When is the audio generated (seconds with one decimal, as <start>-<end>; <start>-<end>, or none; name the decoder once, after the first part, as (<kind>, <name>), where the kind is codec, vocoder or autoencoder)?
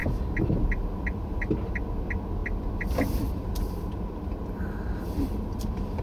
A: none